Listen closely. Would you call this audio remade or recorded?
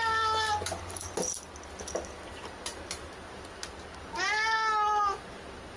recorded